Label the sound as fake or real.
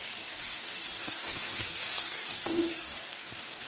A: fake